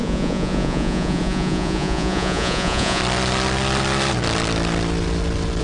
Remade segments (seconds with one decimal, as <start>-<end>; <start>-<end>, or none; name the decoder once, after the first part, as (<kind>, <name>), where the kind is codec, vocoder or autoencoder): 0.0-3.0 (vocoder, Vocos)